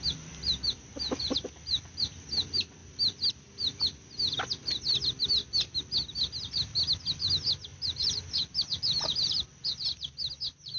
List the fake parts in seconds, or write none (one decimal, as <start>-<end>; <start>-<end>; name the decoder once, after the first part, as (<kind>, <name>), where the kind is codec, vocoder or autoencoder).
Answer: 2.8-3.3 (vocoder, BigVGAN v2); 7.7-10.3

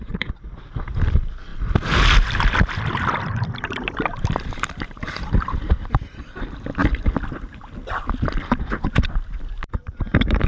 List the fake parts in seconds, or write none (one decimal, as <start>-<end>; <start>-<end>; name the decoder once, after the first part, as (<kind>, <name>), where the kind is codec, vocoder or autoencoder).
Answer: 0.0-6.8 (vocoder, BigVGAN v2); 8.1-10.5